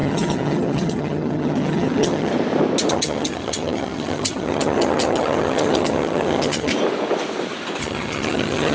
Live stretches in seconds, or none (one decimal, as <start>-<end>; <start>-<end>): 2.3-2.9; 6.7-7.8